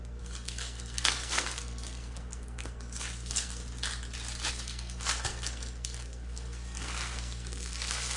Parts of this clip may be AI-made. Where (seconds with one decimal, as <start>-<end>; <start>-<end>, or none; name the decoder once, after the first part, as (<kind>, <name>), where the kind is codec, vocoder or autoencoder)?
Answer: 0.0-3.6 (codec, SNAC); 4.5-8.2